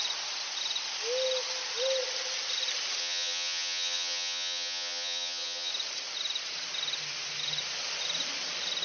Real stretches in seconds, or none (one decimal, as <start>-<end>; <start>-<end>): 0.0-3.0; 5.7-8.8